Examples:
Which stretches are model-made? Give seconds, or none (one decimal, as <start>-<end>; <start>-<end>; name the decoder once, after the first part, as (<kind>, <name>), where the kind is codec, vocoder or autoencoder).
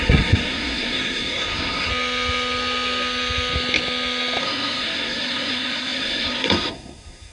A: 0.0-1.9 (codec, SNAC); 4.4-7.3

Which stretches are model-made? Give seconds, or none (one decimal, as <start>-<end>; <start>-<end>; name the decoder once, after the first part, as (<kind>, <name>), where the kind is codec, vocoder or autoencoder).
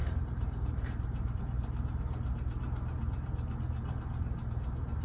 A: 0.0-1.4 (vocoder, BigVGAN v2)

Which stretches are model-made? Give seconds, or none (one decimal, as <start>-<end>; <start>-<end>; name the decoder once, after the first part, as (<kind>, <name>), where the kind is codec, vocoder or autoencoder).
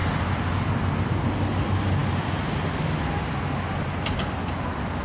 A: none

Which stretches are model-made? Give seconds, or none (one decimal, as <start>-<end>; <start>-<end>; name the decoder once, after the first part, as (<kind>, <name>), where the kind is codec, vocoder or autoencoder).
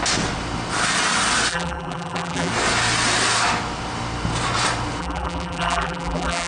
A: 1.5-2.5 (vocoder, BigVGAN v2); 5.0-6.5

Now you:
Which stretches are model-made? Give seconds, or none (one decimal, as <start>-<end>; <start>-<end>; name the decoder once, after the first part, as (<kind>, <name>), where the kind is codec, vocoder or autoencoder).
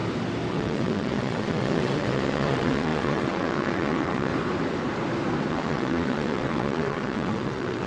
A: 0.5-4.3 (vocoder, WaveNeXt); 5.5-7.9